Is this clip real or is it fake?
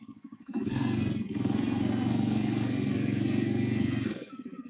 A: fake